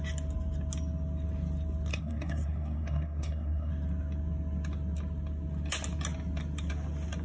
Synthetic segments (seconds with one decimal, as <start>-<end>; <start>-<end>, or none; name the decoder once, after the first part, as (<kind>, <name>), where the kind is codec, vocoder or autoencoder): 1.9-3.7 (codec, SNAC)